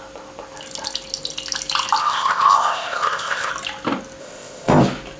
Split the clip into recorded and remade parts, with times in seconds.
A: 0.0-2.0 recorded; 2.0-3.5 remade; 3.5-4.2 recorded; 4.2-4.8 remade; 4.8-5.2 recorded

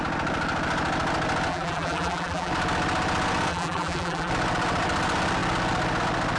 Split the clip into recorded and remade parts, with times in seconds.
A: 0.0-1.5 recorded; 1.5-2.5 remade; 2.5-3.5 recorded; 3.5-4.3 remade; 4.3-6.4 recorded

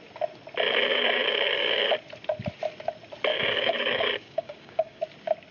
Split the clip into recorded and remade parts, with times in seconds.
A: 0.0-0.9 recorded; 0.9-1.9 remade; 1.9-3.3 recorded; 3.3-5.0 remade; 5.0-5.5 recorded

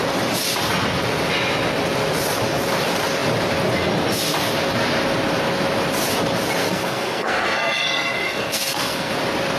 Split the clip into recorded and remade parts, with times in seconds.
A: 0.0-6.6 recorded; 6.6-9.1 remade; 9.1-9.6 recorded

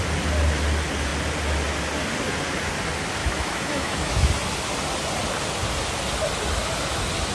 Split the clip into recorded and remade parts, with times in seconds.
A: 0.0-3.2 recorded; 3.2-4.3 remade; 4.3-7.3 recorded

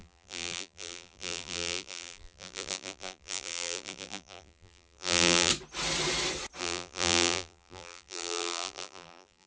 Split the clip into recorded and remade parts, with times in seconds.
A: 0.0-5.5 remade; 5.5-6.6 recorded; 6.6-9.5 remade